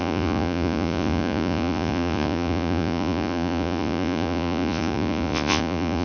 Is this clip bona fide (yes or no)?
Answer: no